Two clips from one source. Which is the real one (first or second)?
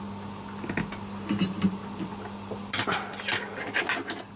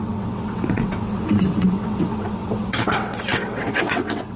first